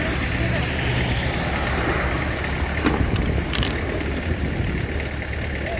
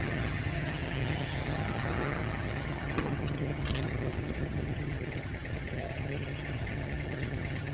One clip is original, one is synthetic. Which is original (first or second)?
first